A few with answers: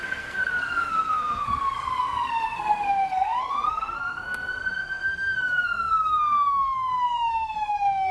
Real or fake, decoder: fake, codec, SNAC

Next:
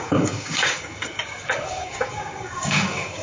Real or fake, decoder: fake, codec, DAC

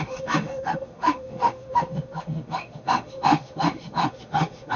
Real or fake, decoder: fake, autoencoder, DAC-VAE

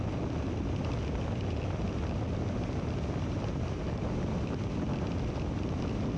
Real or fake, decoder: real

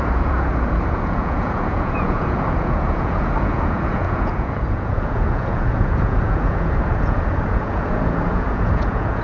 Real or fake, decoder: fake, vocoder, Vocos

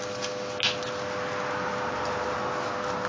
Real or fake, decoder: real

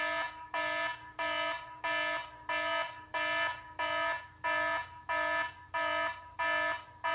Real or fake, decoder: real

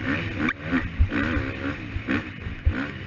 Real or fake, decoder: real